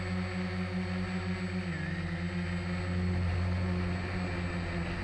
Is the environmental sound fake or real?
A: real